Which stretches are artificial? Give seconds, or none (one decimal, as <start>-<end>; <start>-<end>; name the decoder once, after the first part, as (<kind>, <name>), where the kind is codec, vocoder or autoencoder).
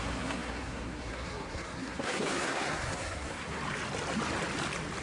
0.0-3.6 (codec, SNAC)